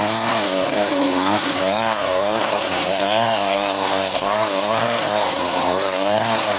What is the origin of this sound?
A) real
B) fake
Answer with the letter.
B